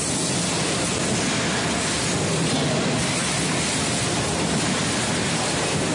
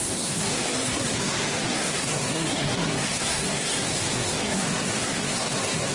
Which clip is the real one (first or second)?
first